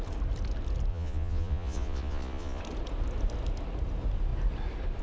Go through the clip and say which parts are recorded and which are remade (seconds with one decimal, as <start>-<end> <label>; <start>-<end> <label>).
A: 0.0-0.9 recorded; 0.9-2.6 remade; 2.6-5.0 recorded